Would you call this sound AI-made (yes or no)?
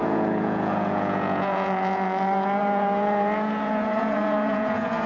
yes